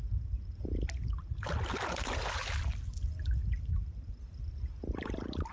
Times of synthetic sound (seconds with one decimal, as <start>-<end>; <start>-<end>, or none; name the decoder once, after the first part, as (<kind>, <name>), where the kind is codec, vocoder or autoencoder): none